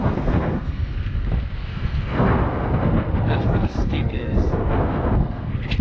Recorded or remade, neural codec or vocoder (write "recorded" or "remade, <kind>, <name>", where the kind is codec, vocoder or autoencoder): remade, codec, SNAC